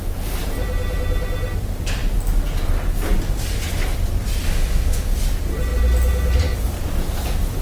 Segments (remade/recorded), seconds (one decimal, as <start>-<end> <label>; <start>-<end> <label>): 0.0-4.5 recorded; 4.5-5.1 remade; 5.1-7.6 recorded

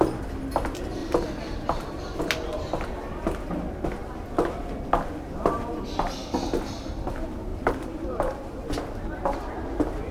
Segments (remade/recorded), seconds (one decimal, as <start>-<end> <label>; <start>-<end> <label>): 0.0-1.0 recorded; 1.0-2.2 remade; 2.2-7.5 recorded; 7.5-8.6 remade; 8.6-10.1 recorded

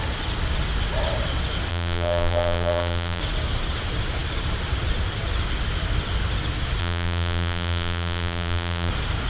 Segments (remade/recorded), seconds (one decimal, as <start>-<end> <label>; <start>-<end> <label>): 0.0-1.7 recorded; 1.7-3.2 remade; 3.2-6.8 recorded; 6.8-8.9 remade; 8.9-9.3 recorded

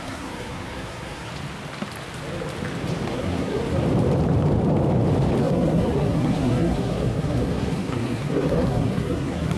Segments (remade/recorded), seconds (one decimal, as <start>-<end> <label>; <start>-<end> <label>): 0.0-1.3 remade; 1.3-3.1 recorded; 3.1-3.6 remade; 3.6-5.4 recorded; 5.4-9.6 remade

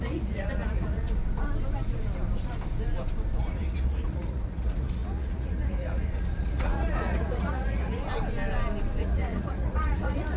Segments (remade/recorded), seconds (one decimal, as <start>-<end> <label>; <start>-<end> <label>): 0.0-1.2 remade; 1.2-3.4 recorded; 3.4-8.0 remade; 8.0-9.0 recorded; 9.0-10.4 remade

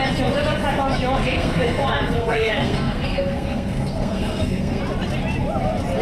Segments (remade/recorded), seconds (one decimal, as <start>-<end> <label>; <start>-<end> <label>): 0.0-1.2 recorded; 1.2-4.8 remade; 4.8-6.0 recorded

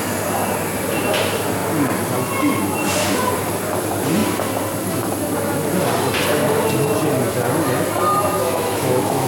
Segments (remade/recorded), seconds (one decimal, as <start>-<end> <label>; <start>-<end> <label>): 0.0-8.4 recorded; 8.4-9.3 remade

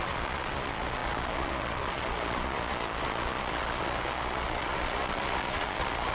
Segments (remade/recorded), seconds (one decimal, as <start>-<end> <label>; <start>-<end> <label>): 0.0-6.1 remade